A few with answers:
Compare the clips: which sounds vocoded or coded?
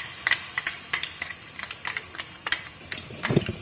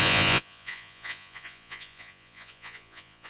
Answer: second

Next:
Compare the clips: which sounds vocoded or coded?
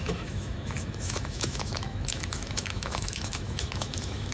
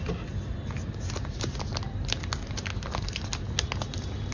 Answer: first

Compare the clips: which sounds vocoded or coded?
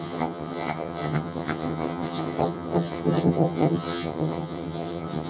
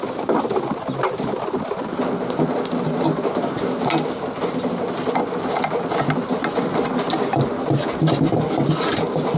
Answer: first